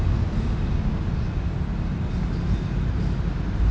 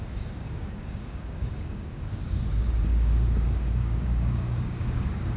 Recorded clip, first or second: first